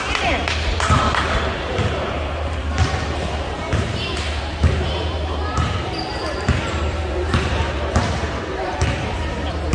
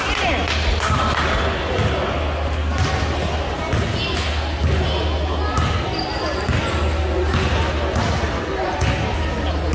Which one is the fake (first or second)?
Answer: first